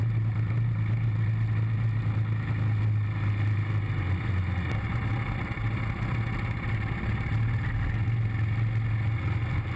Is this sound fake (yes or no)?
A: no